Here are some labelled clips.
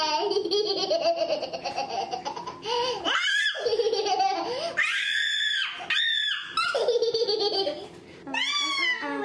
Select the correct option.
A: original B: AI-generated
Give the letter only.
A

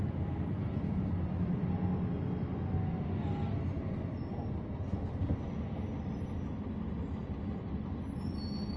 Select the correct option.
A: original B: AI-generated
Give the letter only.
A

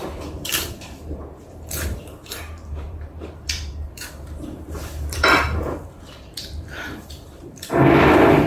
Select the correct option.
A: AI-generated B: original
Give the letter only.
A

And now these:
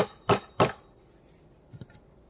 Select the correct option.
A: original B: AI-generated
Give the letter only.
B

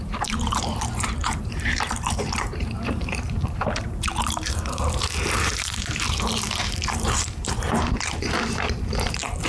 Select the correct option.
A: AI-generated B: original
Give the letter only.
A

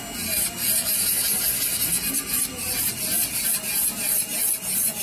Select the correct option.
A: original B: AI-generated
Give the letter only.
B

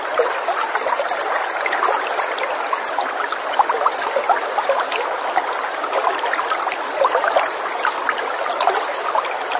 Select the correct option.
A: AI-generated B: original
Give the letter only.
B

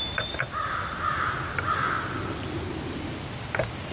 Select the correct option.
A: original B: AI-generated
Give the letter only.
A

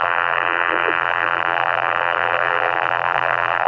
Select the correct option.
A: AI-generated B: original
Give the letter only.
A